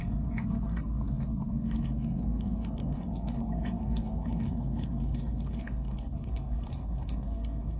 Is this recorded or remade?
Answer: remade